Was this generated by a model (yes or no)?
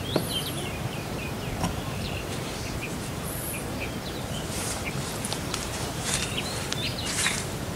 yes